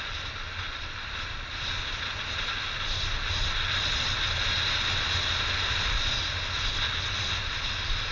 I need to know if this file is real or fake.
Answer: real